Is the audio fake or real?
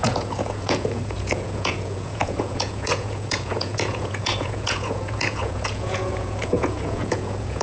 fake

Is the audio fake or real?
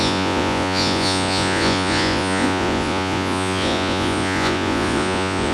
fake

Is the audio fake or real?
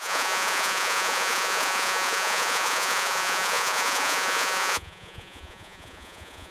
fake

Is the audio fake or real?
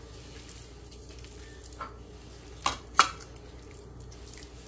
real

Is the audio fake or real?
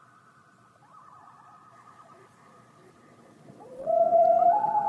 fake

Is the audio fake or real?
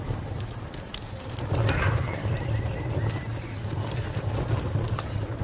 real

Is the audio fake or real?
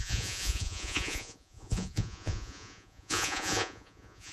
fake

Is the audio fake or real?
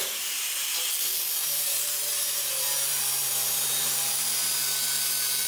real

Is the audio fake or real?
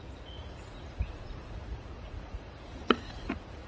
fake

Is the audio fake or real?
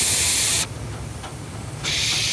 real